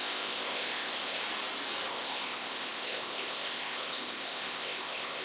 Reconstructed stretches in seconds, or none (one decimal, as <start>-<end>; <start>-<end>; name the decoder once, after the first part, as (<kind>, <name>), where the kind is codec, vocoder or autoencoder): 0.0-1.2 (codec, ZipCodec); 1.9-5.2